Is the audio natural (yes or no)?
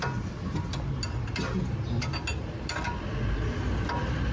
yes